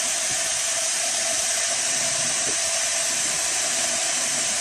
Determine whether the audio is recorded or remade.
remade